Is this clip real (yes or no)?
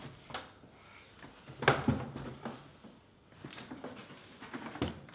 yes